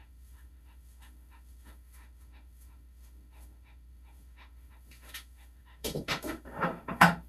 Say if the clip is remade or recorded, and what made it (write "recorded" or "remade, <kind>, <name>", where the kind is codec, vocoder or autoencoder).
remade, autoencoder, DAC-VAE